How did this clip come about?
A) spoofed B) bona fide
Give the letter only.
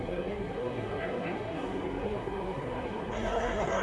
A